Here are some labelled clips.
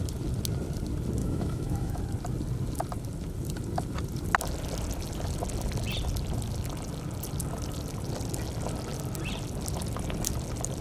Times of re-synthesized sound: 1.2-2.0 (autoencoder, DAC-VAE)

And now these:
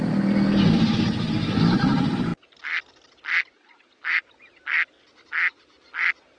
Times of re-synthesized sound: none